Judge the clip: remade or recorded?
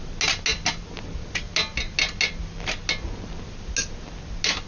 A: recorded